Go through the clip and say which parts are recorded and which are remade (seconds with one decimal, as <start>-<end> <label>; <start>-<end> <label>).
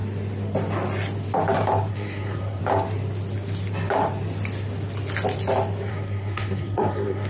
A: 0.0-1.9 recorded; 1.9-2.6 remade; 2.6-5.9 recorded; 5.9-7.3 remade